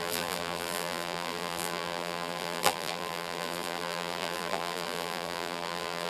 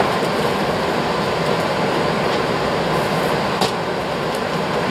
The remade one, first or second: first